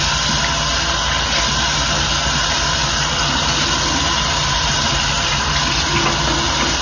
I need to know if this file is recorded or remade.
recorded